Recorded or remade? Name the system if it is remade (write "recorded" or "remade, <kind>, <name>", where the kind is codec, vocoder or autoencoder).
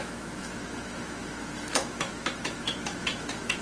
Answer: remade, autoencoder, DAC-VAE